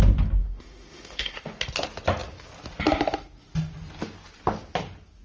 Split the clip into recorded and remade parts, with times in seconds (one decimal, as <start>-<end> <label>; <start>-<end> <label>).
0.0-0.4 recorded; 0.4-1.5 remade; 1.5-5.2 recorded